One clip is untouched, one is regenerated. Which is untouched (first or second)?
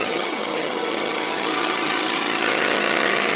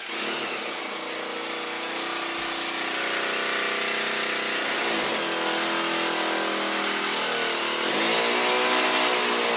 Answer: second